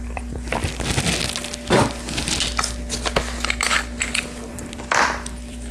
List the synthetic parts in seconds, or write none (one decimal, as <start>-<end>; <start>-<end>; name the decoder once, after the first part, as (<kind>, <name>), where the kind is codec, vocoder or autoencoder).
0.0-0.6 (vocoder, BigVGAN v2); 4.0-5.7

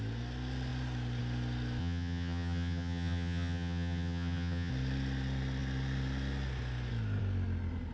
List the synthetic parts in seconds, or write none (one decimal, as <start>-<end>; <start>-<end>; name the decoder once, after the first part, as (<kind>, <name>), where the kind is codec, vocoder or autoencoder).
1.8-4.7 (vocoder, HiFi-GAN)

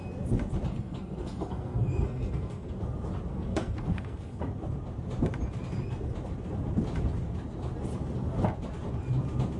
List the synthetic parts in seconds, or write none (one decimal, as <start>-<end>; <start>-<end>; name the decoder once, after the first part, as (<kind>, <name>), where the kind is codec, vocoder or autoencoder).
0.7-2.7 (codec, SNAC); 3.3-4.4

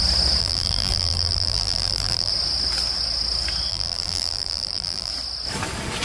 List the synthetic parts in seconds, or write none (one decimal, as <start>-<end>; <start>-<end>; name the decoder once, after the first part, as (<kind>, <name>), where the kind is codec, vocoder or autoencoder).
0.4-2.3 (vocoder, BigVGAN v2); 3.7-5.1

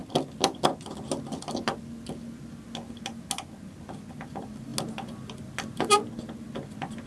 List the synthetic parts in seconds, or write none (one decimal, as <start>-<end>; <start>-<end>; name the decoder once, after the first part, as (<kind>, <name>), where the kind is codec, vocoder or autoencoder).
none

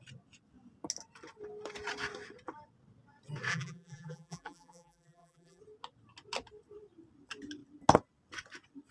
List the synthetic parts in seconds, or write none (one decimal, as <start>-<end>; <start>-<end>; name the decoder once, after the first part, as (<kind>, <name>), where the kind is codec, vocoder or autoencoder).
3.5-5.6 (vocoder, BigVGAN v2)

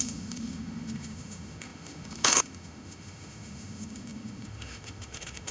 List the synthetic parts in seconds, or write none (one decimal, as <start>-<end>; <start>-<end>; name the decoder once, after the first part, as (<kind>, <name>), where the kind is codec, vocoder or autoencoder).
0.0-5.5 (autoencoder, DAC-VAE)